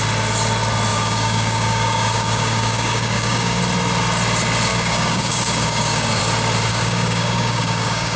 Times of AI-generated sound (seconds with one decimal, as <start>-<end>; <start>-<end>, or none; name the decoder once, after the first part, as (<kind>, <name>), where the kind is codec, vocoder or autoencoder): 0.9-3.6 (codec, DAC); 4.7-6.2; 6.7-8.2